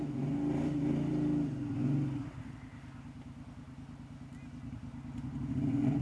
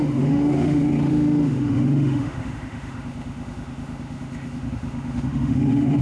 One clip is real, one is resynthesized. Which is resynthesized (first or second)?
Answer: second